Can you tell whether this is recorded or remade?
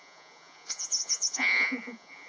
remade